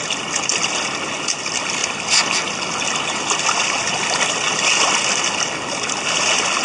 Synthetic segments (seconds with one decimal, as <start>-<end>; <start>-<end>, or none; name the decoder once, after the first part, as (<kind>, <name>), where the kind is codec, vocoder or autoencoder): none